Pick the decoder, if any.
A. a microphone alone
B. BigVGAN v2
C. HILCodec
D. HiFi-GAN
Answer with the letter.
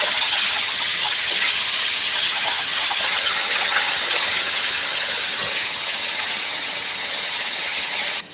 D